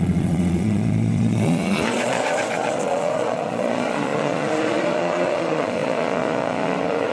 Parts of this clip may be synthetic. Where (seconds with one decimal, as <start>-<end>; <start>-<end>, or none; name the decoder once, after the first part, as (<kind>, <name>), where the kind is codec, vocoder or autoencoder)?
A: 0.0-7.1 (vocoder, Vocos)